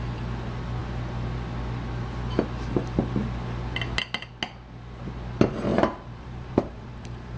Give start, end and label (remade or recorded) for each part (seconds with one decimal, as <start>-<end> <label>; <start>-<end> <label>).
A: 0.0-5.7 recorded; 5.7-7.4 remade